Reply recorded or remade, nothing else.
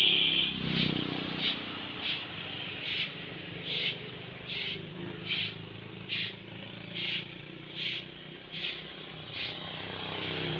recorded